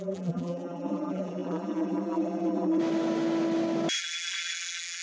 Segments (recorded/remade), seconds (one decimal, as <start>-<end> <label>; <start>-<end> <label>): 0.0-2.8 remade; 2.8-4.0 recorded; 4.0-5.0 remade